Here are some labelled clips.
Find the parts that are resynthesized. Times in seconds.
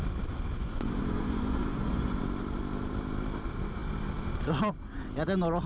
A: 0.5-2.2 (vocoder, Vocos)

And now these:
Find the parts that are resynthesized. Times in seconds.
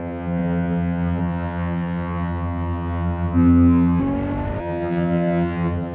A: 0.0-4.0 (vocoder, HiFi-GAN); 4.6-5.9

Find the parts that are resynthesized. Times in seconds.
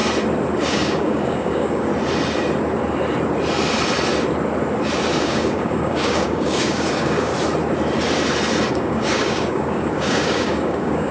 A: 0.7-1.9 (codec, DAC); 5.2-7.3; 8.7-11.1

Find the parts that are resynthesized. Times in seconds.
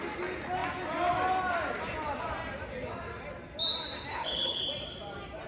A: 4.1-4.6 (codec, HILCodec)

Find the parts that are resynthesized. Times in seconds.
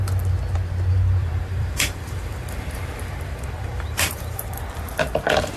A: 1.2-4.6 (vocoder, BigVGAN v2)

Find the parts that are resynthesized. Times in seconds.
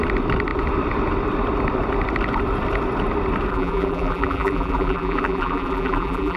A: 3.5-6.4 (vocoder, BigVGAN v2)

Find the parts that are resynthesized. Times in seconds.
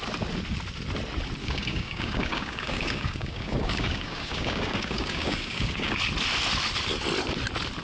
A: 1.4-6.0 (codec, DAC)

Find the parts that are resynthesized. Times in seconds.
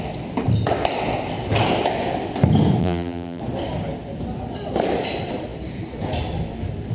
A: 2.8-3.4 (vocoder, BigVGAN v2)